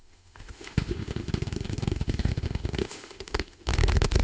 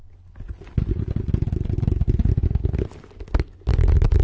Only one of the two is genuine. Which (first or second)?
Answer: second